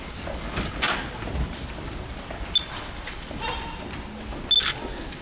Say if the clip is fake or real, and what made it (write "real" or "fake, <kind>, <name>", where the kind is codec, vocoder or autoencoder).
real